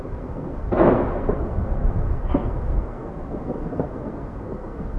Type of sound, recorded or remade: remade